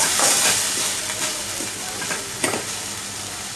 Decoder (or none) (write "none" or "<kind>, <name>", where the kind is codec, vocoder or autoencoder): none